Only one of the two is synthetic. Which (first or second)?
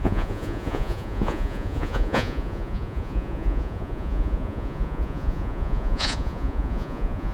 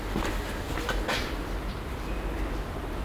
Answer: first